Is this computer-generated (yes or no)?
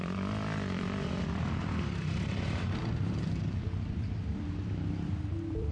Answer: yes